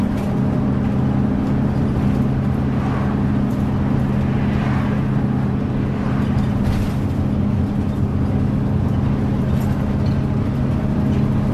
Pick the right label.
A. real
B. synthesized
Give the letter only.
A